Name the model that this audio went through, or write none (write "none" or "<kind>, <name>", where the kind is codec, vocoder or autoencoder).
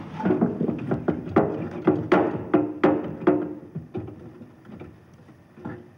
none